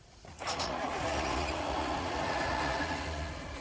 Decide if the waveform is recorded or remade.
remade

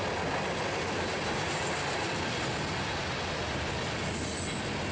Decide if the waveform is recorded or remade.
recorded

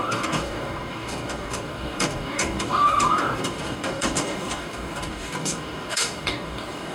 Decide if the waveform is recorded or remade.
remade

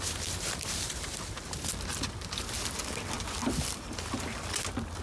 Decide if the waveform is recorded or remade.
recorded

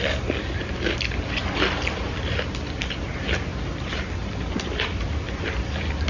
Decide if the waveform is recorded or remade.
recorded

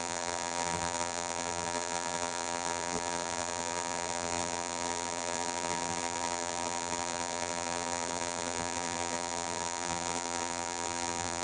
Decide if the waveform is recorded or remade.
remade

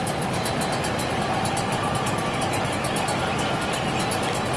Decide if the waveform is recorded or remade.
recorded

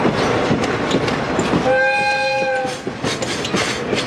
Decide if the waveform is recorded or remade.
recorded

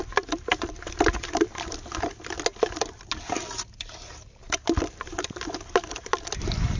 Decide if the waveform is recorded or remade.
recorded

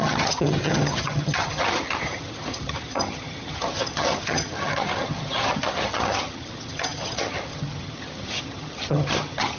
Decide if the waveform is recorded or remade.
remade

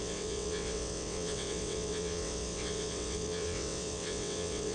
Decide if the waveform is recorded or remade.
remade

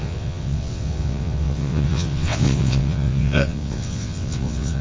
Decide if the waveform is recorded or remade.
remade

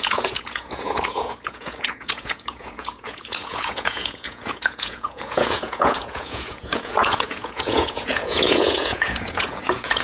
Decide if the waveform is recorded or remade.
remade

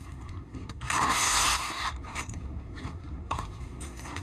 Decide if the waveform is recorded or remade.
remade